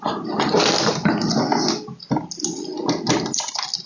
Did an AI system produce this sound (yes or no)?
no